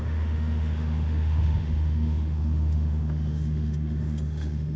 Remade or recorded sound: remade